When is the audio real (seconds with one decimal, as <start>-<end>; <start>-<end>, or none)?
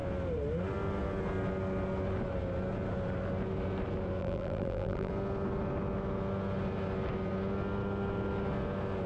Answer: 0.0-4.2; 5.1-9.1